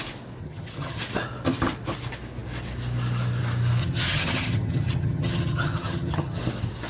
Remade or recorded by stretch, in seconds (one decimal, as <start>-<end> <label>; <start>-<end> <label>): 0.0-0.4 recorded; 0.4-1.0 remade; 1.0-3.8 recorded; 3.8-6.4 remade; 6.4-6.9 recorded